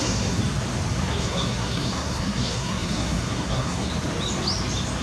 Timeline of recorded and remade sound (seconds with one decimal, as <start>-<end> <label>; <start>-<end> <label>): 0.0-0.4 remade; 0.4-1.1 recorded; 1.1-3.9 remade; 3.9-5.0 recorded